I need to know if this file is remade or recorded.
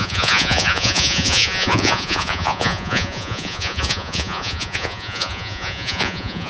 remade